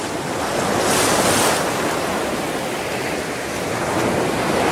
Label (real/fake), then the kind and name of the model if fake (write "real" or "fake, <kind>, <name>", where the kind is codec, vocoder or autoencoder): real